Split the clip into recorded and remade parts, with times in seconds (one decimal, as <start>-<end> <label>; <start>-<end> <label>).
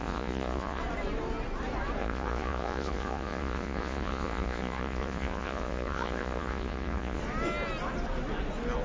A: 0.0-0.8 remade; 0.8-2.0 recorded; 2.0-7.2 remade; 7.2-8.8 recorded